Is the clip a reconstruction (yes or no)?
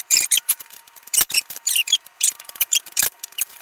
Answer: yes